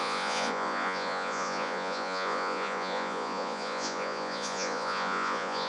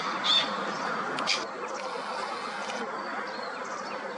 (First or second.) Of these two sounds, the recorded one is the second